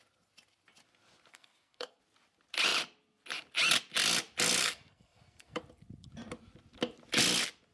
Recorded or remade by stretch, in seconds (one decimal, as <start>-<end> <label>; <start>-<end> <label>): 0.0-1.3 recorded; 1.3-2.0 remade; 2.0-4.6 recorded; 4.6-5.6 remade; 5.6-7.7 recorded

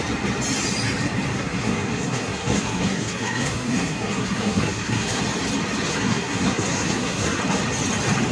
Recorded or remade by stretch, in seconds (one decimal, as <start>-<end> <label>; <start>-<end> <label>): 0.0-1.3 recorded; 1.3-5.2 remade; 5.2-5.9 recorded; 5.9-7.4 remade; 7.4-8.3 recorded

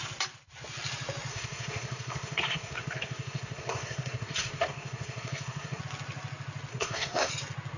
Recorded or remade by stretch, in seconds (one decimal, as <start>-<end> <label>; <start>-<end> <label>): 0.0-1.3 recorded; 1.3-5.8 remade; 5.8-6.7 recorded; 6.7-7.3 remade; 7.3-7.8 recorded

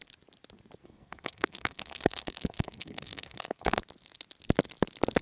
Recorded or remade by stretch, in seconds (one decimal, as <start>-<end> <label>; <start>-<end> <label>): 0.0-0.8 recorded; 0.8-3.8 remade; 3.8-5.2 recorded

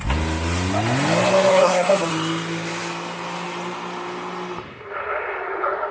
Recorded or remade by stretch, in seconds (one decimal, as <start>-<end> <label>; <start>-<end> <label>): 0.0-1.5 recorded; 1.5-2.1 remade; 2.1-5.9 recorded

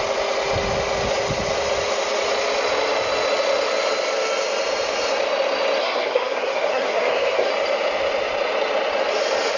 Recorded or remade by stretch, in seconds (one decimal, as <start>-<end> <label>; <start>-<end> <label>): 0.0-5.8 recorded; 5.8-7.5 remade; 7.5-9.6 recorded

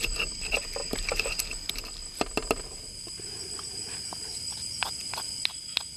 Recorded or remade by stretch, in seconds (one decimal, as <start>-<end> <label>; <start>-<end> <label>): 0.0-6.0 recorded